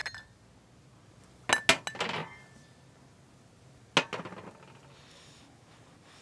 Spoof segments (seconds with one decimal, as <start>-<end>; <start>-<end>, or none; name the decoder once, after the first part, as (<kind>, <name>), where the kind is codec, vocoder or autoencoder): none